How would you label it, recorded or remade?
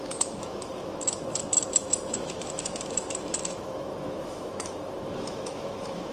remade